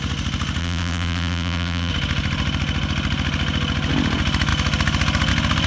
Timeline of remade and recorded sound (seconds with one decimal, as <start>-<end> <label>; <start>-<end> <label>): 0.0-0.6 recorded; 0.6-1.9 remade; 1.9-5.7 recorded